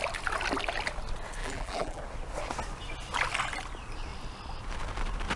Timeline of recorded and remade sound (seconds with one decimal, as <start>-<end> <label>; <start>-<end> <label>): 0.0-1.4 recorded; 1.4-2.0 remade; 2.0-5.4 recorded